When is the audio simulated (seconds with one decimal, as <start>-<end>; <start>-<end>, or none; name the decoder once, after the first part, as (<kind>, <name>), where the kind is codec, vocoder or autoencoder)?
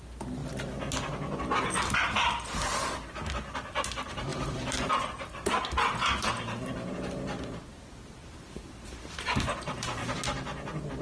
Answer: 4.3-4.9 (vocoder, BigVGAN v2); 8.2-10.1